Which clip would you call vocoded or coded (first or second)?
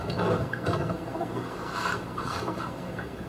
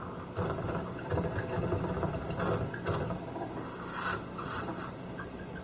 first